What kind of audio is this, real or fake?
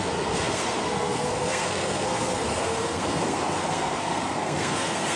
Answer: fake